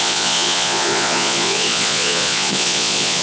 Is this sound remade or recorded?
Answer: remade